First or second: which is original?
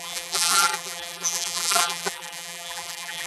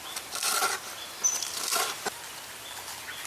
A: second